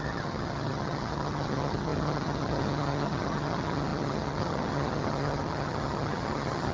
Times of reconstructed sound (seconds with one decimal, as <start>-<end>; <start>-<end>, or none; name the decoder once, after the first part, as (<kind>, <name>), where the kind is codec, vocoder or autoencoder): 0.0-6.7 (vocoder, HiFi-GAN)